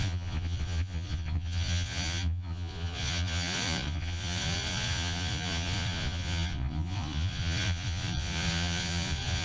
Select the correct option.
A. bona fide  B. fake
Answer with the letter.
B